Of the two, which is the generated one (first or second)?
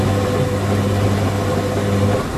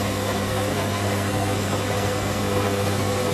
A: second